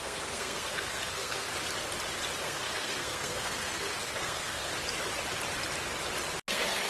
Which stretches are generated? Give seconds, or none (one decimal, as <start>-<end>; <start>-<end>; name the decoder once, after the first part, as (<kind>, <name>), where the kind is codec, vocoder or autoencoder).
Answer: 0.0-1.5 (codec, SNAC); 2.4-4.7; 6.5-6.9